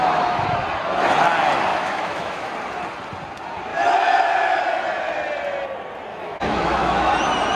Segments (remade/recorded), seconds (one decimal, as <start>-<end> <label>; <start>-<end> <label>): 0.0-1.7 recorded; 1.7-2.5 remade; 2.5-3.7 recorded; 3.7-4.6 remade; 4.6-6.1 recorded; 6.1-7.1 remade; 7.1-7.5 recorded